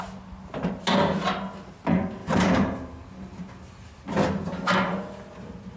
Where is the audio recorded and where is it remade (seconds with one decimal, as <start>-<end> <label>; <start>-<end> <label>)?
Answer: 0.0-2.2 recorded; 2.2-3.5 remade; 3.5-5.8 recorded